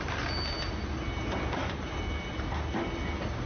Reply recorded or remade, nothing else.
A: recorded